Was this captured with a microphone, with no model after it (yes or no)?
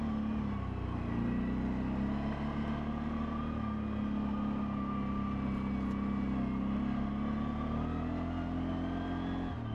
yes